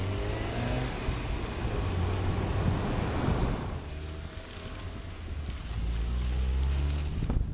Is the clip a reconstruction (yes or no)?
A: no